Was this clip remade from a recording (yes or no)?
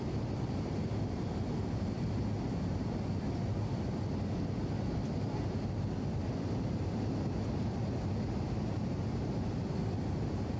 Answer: no